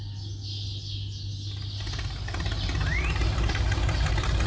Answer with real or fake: real